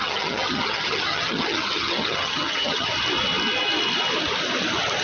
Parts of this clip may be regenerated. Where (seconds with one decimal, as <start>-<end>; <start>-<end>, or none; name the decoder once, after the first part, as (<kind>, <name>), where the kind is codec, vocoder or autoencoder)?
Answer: 0.0-2.9 (vocoder, HiFi-GAN)